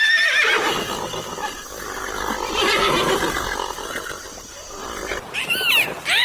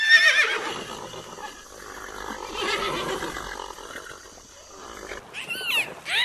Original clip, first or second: second